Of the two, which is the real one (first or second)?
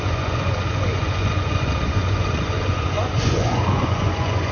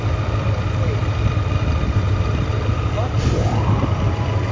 second